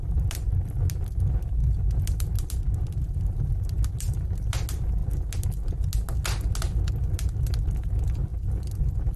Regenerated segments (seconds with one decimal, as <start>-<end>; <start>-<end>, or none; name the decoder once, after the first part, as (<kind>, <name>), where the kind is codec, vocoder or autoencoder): none